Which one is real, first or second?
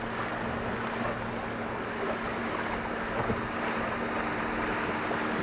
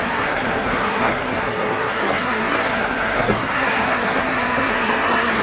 first